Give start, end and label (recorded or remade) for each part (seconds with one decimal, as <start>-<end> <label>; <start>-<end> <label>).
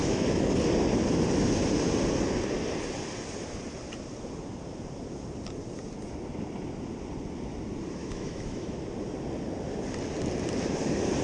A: 0.0-0.5 remade; 0.5-8.0 recorded; 8.0-8.8 remade; 8.8-11.2 recorded